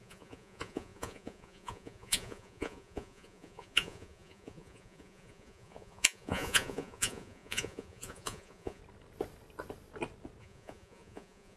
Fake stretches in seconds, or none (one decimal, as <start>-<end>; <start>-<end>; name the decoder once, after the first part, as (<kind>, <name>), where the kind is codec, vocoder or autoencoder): 0.0-8.8 (vocoder, Vocos); 10.4-11.6